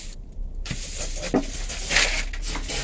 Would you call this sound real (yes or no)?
yes